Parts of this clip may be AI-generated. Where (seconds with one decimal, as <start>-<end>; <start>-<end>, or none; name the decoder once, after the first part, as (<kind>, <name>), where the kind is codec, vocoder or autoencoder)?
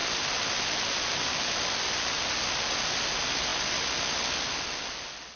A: none